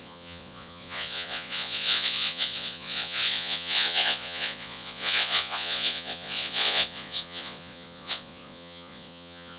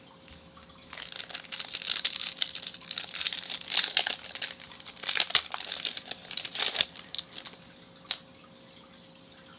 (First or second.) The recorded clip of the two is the second